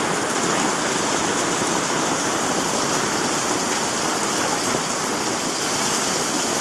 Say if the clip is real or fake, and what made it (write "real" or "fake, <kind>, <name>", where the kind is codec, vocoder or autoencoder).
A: real